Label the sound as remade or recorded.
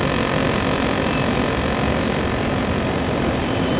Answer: recorded